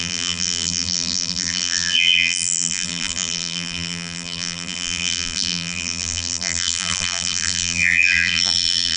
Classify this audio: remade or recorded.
remade